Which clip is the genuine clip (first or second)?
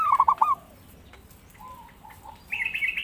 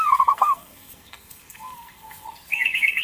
first